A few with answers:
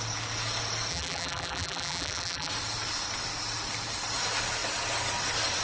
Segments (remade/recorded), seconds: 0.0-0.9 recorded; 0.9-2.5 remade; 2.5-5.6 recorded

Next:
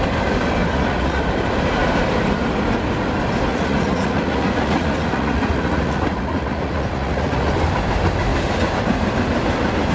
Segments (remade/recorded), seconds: 0.0-0.7 recorded; 0.7-1.2 remade; 1.2-3.5 recorded; 3.5-7.5 remade; 7.5-9.9 recorded

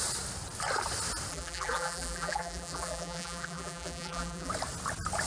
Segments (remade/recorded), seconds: 0.0-1.3 recorded; 1.3-4.5 remade; 4.5-5.3 recorded

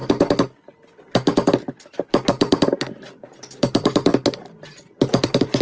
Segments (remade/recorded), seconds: 0.0-1.6 recorded; 1.6-4.1 remade; 4.1-5.0 recorded; 5.0-5.6 remade